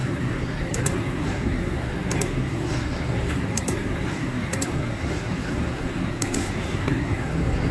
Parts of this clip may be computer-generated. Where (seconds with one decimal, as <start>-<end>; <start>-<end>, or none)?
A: 0.0-7.7